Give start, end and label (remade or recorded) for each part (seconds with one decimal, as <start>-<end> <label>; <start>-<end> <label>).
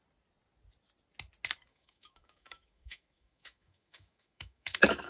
0.0-1.7 recorded; 1.7-5.1 remade